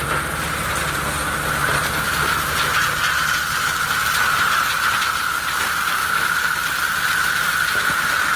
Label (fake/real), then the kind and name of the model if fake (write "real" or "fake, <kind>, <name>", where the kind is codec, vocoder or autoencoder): real